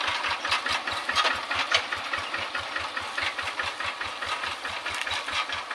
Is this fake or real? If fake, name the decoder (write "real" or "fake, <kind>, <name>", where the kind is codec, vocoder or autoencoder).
real